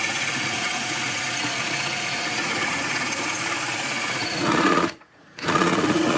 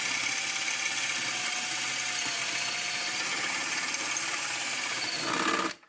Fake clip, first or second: first